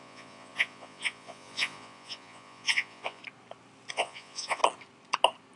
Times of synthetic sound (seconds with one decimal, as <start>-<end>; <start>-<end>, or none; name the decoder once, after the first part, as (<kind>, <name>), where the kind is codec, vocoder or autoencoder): 0.0-3.2 (vocoder, Vocos); 3.9-4.6